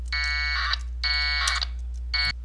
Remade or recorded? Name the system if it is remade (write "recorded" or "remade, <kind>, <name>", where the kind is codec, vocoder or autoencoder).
recorded